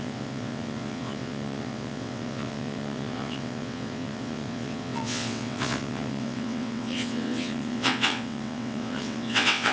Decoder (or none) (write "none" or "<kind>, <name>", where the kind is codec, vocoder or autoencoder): vocoder, WaveNeXt